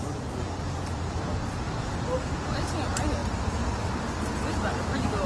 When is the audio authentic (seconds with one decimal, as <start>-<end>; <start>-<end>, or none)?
0.0-5.3